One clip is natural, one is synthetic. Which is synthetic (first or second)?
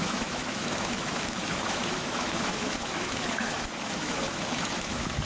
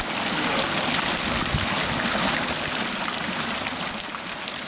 first